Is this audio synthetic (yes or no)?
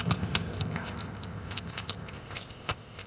yes